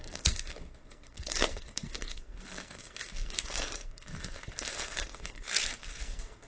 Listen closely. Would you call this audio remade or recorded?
remade